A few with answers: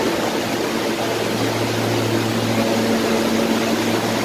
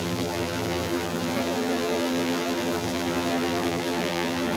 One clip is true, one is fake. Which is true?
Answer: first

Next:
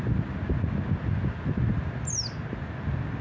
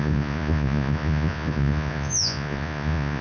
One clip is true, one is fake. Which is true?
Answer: first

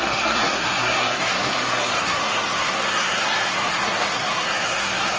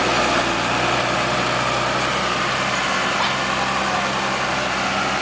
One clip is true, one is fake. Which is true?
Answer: second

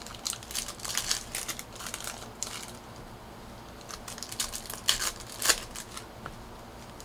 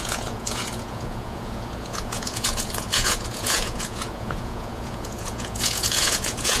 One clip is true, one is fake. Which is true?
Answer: first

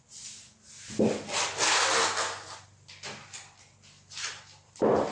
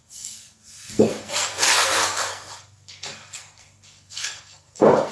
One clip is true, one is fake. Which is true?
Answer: first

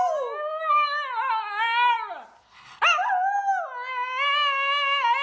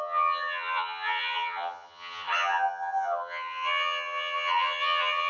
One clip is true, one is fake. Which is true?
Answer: first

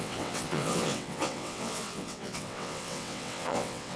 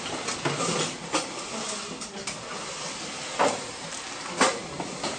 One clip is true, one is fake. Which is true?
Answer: second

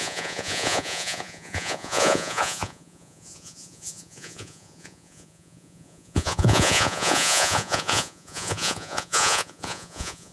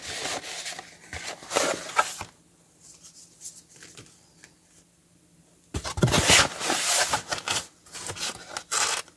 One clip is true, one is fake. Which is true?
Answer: second